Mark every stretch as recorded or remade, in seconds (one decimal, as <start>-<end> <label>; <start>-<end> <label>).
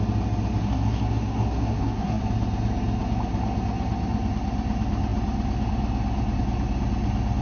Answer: 0.0-0.6 recorded; 0.6-2.2 remade; 2.2-7.4 recorded